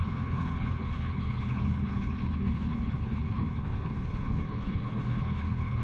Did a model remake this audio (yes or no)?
yes